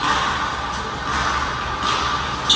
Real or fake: real